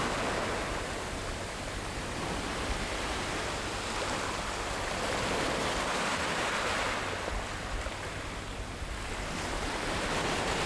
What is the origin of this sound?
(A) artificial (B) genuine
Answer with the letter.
B